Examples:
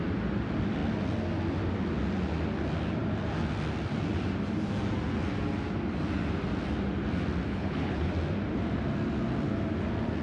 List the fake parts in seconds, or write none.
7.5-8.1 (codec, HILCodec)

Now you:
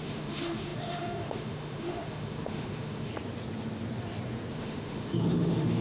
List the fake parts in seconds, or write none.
0.0-3.1 (autoencoder, DAC-VAE); 4.5-5.8

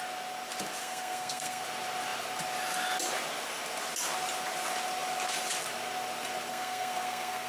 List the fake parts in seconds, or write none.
0.8-1.6 (codec, SNAC); 6.5-7.5

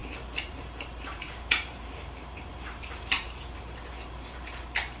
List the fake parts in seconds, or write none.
0.0-5.0 (vocoder, BigVGAN v2)